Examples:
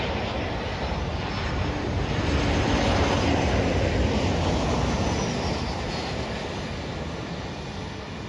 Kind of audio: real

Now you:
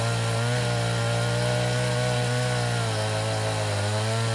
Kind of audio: real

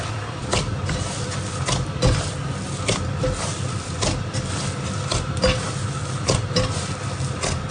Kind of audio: real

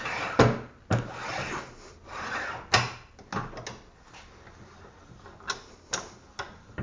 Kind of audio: real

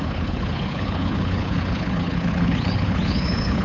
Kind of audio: fake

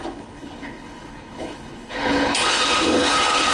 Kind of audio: fake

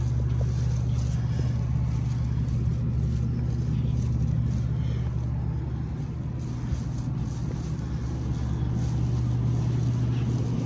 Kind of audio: real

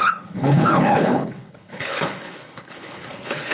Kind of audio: fake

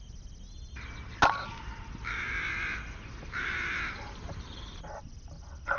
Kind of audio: real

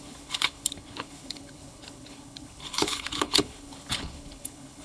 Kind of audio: fake